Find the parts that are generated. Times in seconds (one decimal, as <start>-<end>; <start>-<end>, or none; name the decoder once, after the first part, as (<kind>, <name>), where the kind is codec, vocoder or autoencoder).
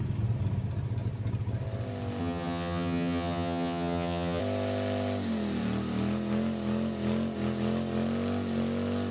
2.2-4.4 (vocoder, HiFi-GAN)